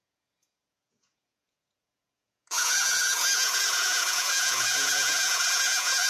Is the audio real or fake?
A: fake